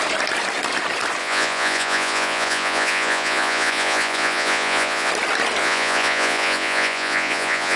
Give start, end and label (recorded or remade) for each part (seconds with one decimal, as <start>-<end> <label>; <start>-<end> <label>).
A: 0.0-1.2 recorded; 1.2-5.1 remade; 5.1-5.6 recorded; 5.6-7.8 remade